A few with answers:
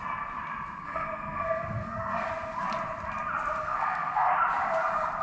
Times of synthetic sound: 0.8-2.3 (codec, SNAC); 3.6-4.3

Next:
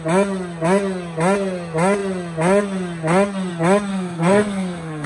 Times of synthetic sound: 3.9-5.1 (codec, SNAC)

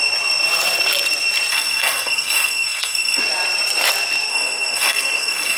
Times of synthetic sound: 1.5-3.2 (codec, SNAC); 4.3-5.6

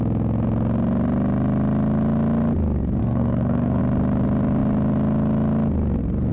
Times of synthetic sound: 3.0-3.8 (codec, SNAC)